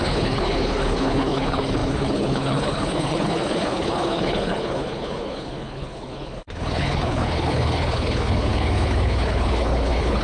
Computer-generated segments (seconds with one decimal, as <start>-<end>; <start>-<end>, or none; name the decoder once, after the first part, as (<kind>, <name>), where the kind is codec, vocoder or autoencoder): 0.0-10.2 (codec, HILCodec)